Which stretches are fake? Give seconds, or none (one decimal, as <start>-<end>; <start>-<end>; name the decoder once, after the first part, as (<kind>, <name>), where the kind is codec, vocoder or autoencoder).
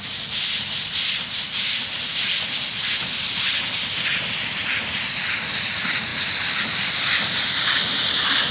none